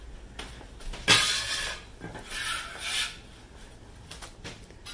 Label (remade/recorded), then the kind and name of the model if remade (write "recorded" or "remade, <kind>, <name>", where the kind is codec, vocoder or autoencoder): recorded